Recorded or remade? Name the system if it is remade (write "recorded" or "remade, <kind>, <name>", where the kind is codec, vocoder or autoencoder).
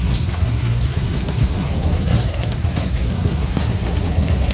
remade, codec, SNAC